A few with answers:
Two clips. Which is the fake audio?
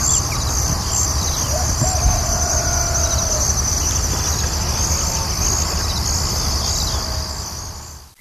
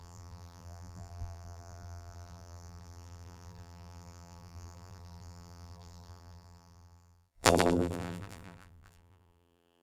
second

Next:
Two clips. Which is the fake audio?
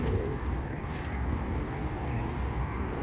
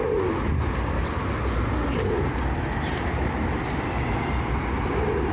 first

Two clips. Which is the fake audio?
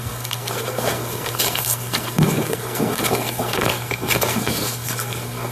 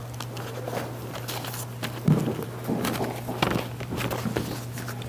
first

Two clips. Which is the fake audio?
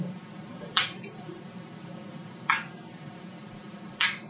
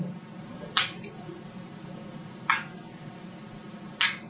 first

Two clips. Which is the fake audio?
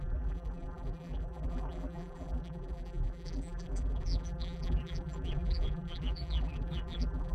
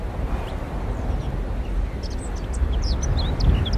first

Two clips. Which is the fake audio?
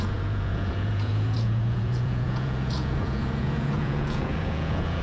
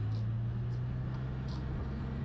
first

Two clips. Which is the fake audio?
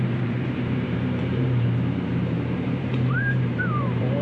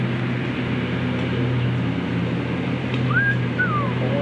first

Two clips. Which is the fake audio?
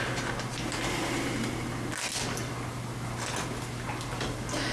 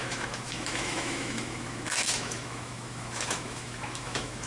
second